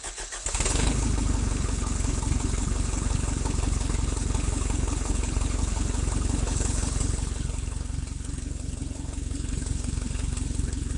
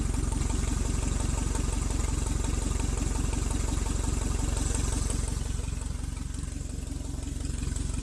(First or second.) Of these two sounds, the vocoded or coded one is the first